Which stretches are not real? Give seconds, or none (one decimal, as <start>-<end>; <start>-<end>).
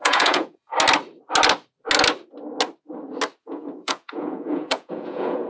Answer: 0.0-0.7; 3.4-5.5